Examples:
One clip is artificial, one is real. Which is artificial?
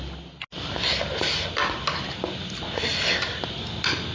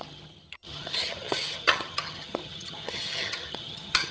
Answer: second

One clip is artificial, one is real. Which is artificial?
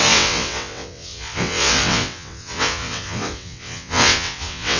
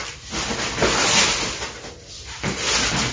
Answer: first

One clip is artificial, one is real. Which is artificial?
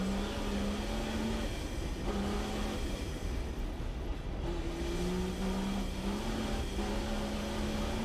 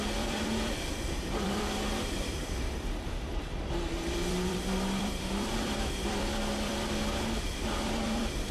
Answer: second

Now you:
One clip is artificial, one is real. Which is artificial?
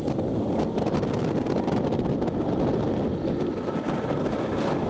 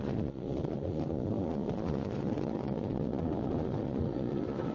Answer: second